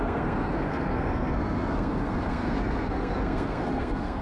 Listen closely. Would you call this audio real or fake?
fake